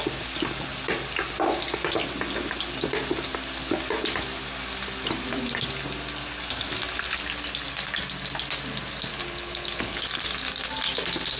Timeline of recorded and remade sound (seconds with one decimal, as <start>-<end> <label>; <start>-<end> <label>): 0.0-9.1 recorded; 9.1-10.0 remade; 10.0-11.4 recorded